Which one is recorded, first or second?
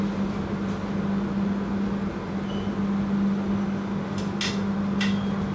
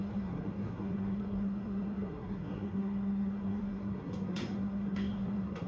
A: first